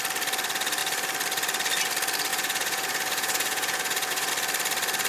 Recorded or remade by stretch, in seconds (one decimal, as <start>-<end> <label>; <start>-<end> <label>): 0.0-2.3 recorded; 2.3-4.3 remade; 4.3-5.1 recorded